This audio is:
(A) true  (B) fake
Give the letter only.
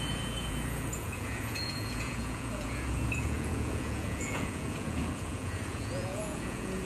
B